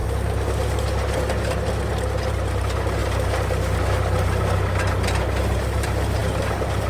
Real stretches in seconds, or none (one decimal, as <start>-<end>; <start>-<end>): 0.0-6.9